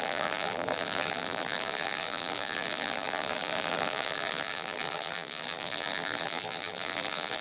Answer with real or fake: fake